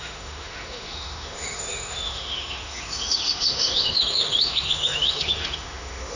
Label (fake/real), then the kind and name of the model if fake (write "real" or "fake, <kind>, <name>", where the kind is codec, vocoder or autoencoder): fake, autoencoder, DAC-VAE